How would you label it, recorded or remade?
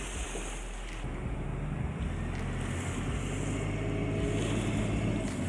recorded